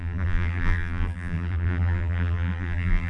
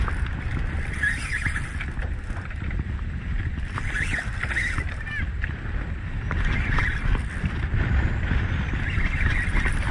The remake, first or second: first